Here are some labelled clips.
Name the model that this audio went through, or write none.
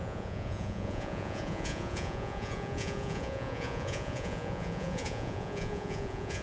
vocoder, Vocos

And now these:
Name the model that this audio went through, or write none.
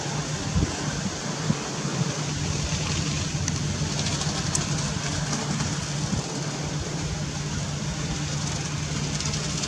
none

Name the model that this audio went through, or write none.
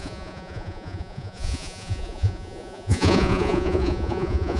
vocoder, Vocos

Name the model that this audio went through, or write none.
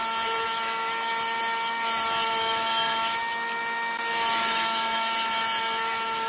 none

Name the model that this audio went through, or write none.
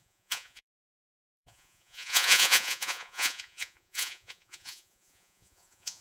vocoder, Vocos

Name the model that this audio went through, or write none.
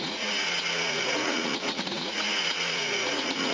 vocoder, Vocos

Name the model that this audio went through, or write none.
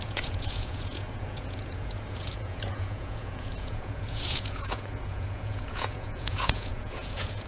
vocoder, Vocos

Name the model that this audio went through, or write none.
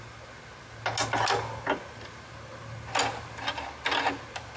none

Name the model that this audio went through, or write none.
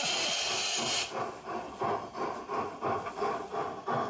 none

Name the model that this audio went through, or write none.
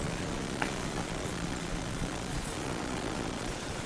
vocoder, Vocos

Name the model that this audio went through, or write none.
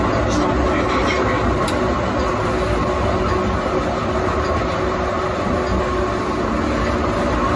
none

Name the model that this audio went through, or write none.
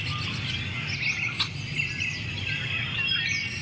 none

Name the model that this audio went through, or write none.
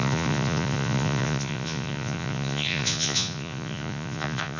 vocoder, Vocos